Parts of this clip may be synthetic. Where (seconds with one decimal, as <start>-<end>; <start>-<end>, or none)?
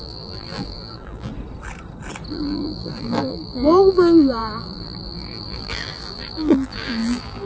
0.0-1.3; 2.3-7.5